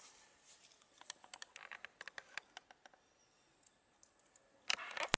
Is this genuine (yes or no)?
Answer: yes